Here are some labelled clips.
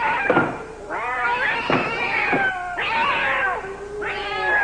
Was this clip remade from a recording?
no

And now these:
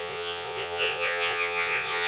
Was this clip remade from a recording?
yes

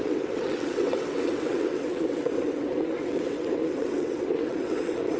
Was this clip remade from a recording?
yes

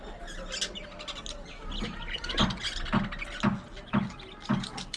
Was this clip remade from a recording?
no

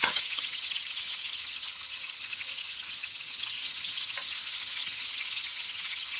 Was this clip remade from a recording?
yes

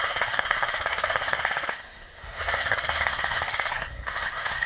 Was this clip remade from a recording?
yes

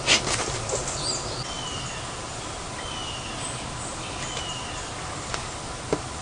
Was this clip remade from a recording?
no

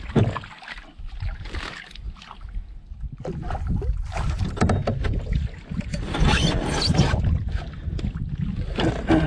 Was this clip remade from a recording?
no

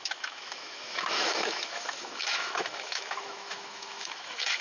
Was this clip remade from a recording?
yes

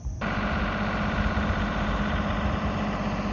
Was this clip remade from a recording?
no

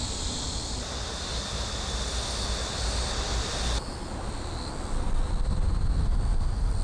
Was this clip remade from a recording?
no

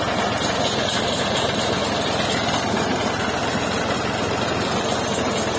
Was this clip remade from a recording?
no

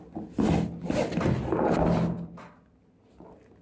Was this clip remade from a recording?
no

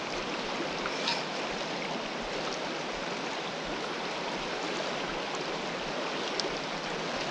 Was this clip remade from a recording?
no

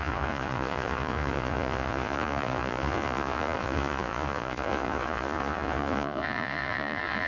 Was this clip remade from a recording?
yes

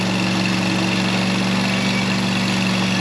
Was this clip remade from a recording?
no